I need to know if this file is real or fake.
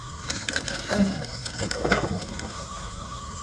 fake